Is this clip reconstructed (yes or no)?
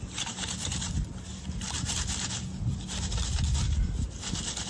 no